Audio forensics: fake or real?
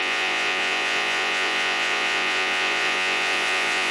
fake